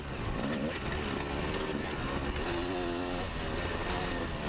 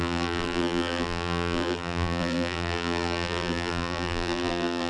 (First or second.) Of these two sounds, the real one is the first